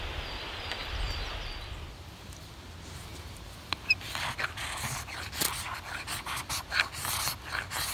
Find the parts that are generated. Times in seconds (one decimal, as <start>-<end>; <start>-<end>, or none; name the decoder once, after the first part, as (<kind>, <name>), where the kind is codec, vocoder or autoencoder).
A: none